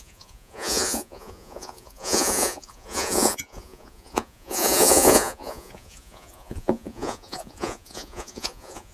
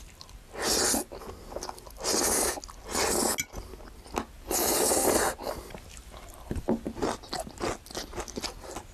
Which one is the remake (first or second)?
first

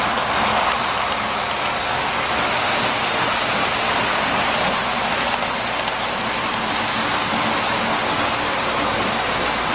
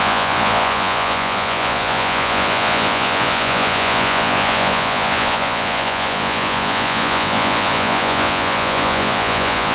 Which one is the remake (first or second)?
second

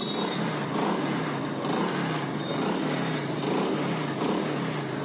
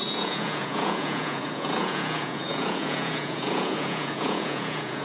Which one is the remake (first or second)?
second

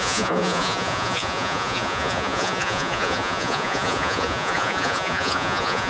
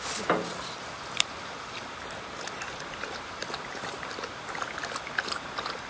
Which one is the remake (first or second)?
first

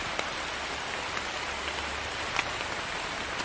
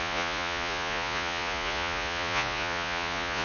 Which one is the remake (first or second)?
second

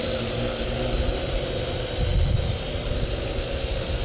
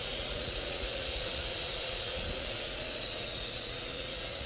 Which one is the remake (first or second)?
second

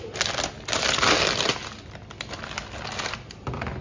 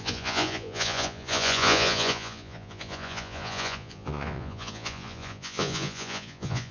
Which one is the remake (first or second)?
second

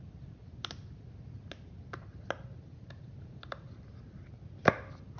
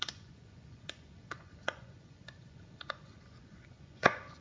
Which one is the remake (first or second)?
second